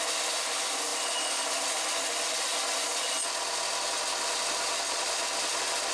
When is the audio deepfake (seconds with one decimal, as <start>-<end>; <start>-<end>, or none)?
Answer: none